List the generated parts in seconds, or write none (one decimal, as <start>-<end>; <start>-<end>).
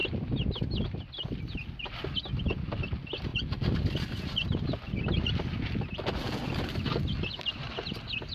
none